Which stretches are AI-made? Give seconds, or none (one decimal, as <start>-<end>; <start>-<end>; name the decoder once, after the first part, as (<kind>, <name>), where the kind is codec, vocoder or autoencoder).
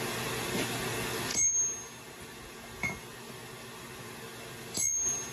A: none